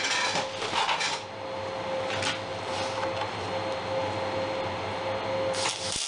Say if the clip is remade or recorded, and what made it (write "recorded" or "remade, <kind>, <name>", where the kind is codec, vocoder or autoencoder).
recorded